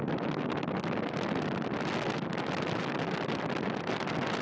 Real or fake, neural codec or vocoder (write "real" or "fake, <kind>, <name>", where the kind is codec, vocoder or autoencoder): real